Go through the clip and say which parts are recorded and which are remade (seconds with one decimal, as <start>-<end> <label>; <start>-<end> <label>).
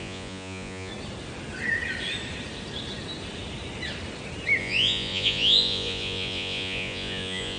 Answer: 0.0-0.9 remade; 0.9-4.6 recorded; 4.6-7.6 remade